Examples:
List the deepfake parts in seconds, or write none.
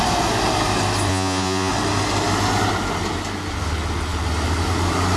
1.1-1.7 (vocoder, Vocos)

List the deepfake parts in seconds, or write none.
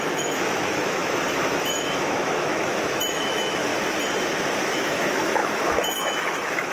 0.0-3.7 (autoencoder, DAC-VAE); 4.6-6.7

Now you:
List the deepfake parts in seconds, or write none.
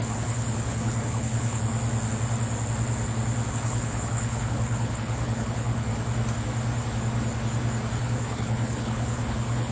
0.0-1.7 (codec, HILCodec); 3.5-5.9; 8.0-9.7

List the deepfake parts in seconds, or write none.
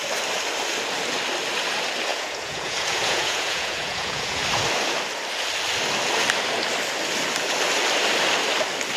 2.1-4.4 (vocoder, Vocos)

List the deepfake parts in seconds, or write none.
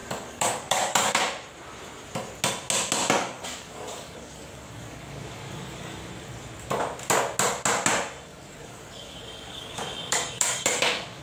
0.0-1.2 (codec, DAC); 3.2-6.1; 8.3-11.2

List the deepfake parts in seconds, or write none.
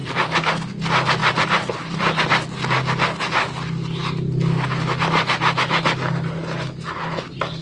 0.0-0.5 (vocoder, BigVGAN v2); 1.2-2.3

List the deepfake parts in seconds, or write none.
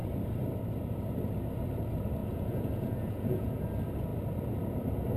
2.2-3.6 (vocoder, Vocos)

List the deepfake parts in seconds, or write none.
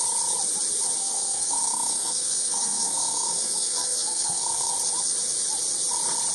1.0-4.7 (codec, SNAC)